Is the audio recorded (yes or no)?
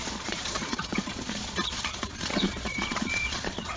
no